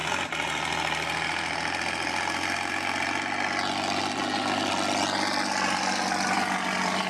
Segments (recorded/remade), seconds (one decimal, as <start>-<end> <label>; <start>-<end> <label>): 0.0-7.1 recorded